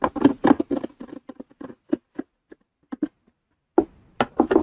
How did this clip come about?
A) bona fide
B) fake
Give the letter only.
A